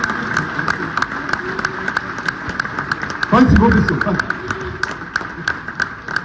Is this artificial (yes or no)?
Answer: no